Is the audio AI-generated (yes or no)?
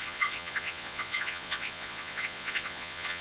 yes